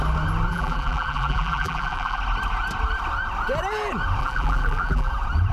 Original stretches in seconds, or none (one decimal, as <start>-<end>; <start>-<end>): 0.0-0.5; 2.2-4.2; 5.1-5.5